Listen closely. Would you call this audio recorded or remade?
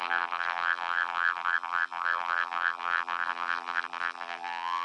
remade